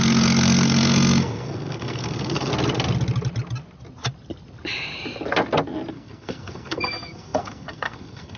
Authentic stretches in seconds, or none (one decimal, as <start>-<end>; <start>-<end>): 2.5-5.9